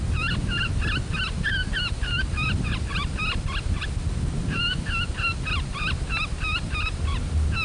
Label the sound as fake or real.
real